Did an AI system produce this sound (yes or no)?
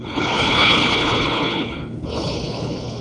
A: yes